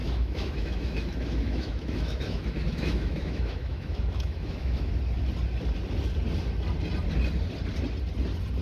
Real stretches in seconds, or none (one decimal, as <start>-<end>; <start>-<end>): 4.9-8.6